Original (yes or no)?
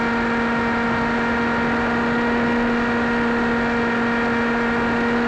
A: yes